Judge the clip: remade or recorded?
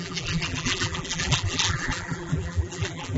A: remade